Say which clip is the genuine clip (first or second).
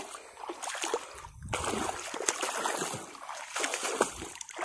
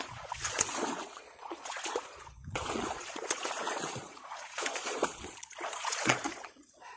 first